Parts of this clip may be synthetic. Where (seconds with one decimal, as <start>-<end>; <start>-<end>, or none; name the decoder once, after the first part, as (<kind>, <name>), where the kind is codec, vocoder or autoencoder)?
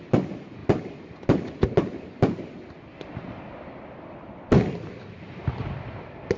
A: none